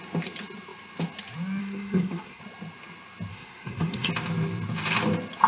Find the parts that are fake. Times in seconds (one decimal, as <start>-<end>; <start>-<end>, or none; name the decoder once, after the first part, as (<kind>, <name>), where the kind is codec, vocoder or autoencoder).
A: 1.6-2.4 (codec, SNAC); 3.3-4.1